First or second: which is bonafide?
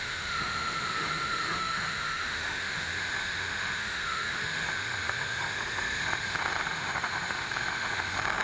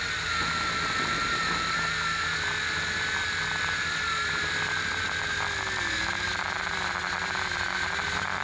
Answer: second